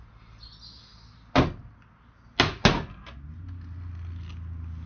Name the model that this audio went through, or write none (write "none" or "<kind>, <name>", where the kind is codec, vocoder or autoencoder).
none